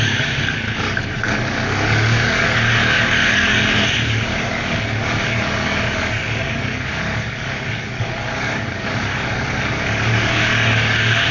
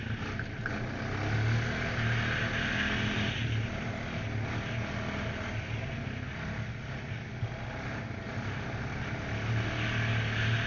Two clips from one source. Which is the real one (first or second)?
second